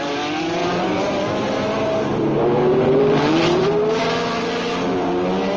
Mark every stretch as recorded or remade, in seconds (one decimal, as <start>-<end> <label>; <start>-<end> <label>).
0.0-0.6 recorded; 0.6-4.0 remade; 4.0-5.6 recorded